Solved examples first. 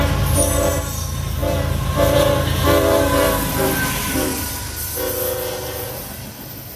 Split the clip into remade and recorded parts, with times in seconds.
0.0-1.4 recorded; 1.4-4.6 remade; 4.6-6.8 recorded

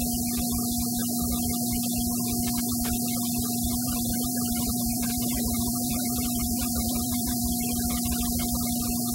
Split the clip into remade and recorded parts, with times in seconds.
0.0-3.7 recorded; 3.7-7.4 remade; 7.4-9.1 recorded